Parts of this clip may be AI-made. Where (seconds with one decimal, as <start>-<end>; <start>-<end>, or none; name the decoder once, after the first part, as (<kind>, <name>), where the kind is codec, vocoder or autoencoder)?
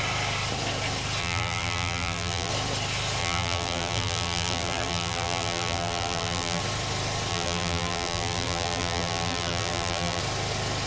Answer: 1.2-2.5 (vocoder, BigVGAN v2); 3.2-6.6; 7.3-10.2